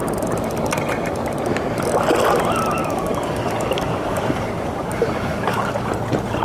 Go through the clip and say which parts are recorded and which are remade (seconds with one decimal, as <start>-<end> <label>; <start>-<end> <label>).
0.0-2.8 recorded; 2.8-5.9 remade; 5.9-6.4 recorded